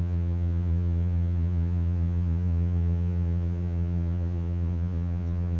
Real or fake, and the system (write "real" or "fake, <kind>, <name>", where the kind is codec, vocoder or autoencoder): fake, vocoder, Vocos